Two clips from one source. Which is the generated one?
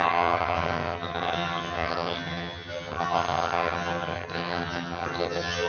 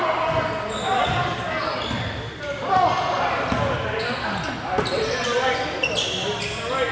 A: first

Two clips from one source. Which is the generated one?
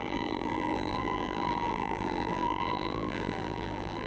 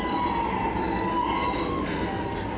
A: first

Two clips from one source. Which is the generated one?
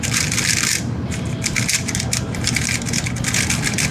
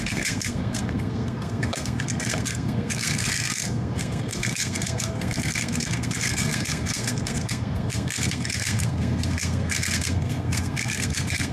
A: second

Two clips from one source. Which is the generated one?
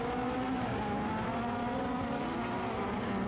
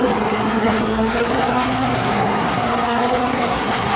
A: second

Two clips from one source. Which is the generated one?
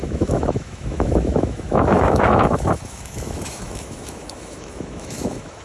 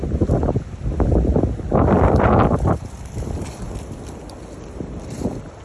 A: first